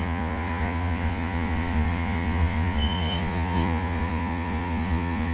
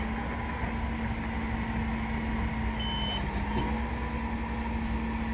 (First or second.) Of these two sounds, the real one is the second